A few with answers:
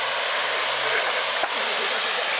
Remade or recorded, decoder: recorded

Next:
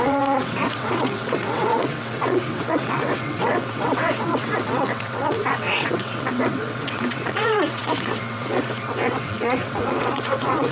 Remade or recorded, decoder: remade, vocoder, WaveNeXt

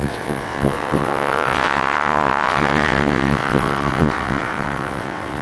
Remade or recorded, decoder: remade, vocoder, WaveNeXt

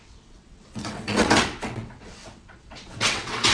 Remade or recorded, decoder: remade, vocoder, WaveNeXt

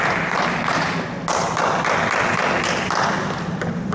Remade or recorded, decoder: recorded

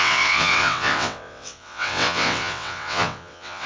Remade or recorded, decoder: remade, vocoder, WaveNeXt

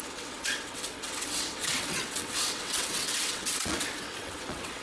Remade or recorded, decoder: remade, vocoder, WaveNeXt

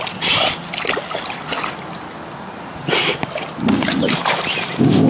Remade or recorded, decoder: recorded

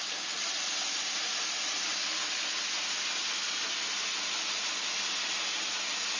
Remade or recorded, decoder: recorded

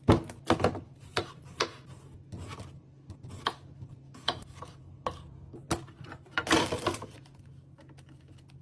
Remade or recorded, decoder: recorded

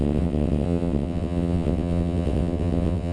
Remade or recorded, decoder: remade, vocoder, WaveNeXt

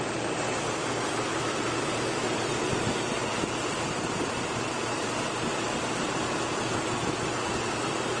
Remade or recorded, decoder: recorded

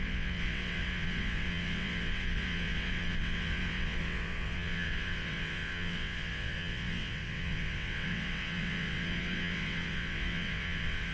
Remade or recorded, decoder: remade, vocoder, WaveNeXt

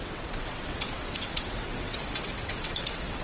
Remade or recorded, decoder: remade, vocoder, WaveNeXt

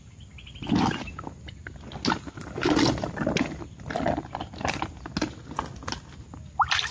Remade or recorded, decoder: recorded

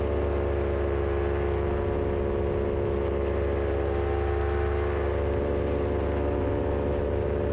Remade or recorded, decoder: recorded